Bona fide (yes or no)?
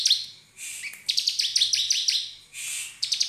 yes